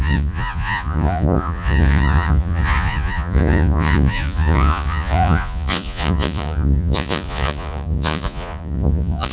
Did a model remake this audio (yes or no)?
yes